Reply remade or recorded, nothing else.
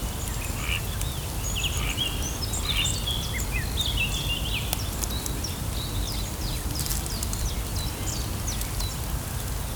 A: recorded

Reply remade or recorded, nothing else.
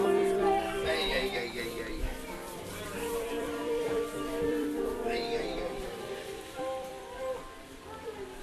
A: remade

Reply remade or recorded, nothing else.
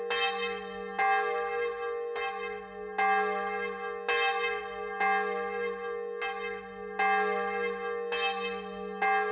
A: recorded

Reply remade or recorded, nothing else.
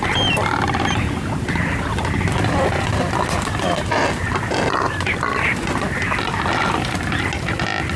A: recorded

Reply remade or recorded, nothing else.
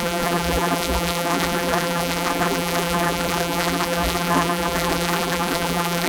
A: remade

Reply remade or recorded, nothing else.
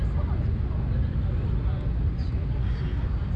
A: recorded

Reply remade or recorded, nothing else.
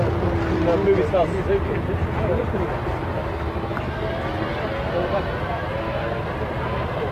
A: recorded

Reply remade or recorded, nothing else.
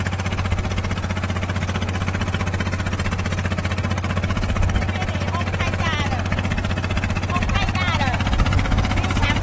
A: recorded